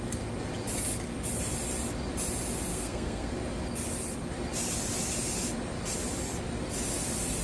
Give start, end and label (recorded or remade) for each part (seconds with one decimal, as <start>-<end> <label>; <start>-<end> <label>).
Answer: 0.0-2.7 recorded; 2.7-3.3 remade; 3.3-7.4 recorded